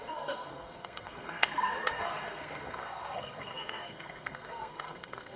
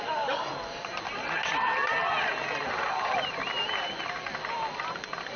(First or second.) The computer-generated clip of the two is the first